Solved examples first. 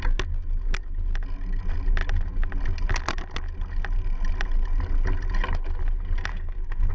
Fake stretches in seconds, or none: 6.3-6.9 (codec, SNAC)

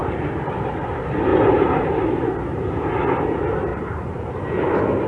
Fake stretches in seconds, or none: 0.0-0.9 (vocoder, BigVGAN v2); 1.3-2.3; 3.7-4.3

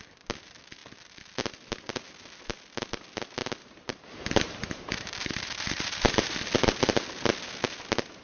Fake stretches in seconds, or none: 3.4-6.5 (vocoder, BigVGAN v2)